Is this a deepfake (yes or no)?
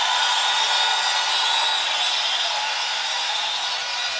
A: no